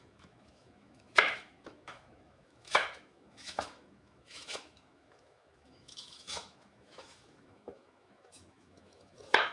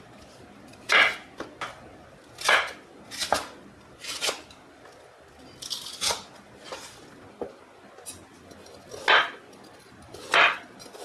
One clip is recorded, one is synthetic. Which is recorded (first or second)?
second